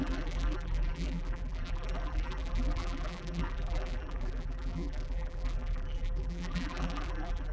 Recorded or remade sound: remade